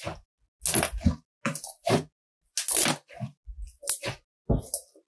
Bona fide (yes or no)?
yes